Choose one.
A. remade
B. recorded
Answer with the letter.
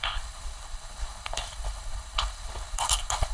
A